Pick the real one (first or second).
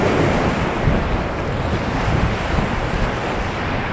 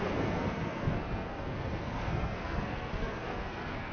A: first